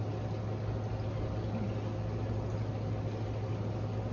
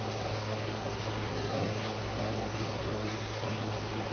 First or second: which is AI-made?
second